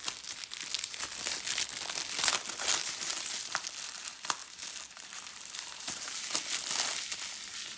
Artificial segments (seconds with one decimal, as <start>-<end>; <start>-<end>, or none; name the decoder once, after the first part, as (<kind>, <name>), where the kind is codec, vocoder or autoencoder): 2.8-3.3 (vocoder, BigVGAN v2); 4.4-6.4